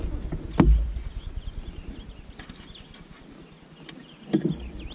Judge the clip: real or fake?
real